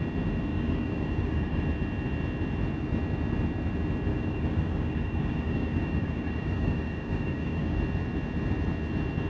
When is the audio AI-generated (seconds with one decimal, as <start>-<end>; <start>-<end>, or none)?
0.5-1.6; 4.1-7.8